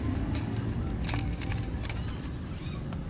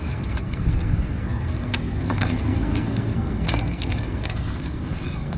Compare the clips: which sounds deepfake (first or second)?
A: second